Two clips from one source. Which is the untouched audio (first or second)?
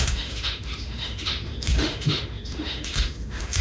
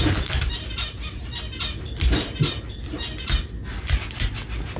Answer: second